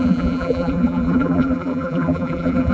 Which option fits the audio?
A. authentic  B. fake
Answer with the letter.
B